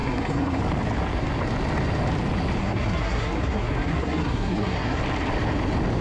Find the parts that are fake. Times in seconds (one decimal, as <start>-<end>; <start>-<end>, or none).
0.0-0.6; 2.6-5.0